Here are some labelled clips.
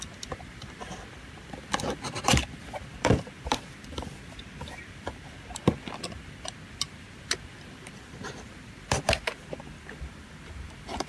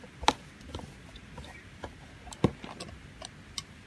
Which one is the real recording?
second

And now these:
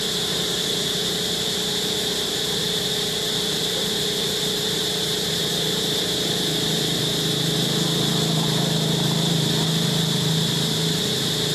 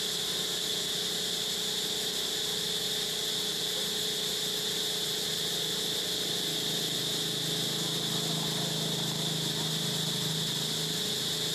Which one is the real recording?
second